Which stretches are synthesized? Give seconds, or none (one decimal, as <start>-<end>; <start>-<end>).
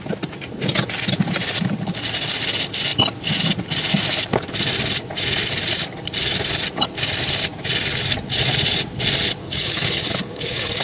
9.4-10.8